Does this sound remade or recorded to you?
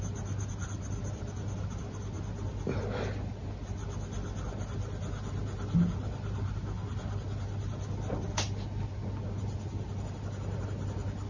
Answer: recorded